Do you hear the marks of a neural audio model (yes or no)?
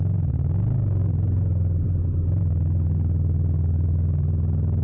no